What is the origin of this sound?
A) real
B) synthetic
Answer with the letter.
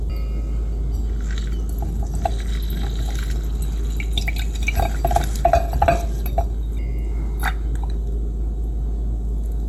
A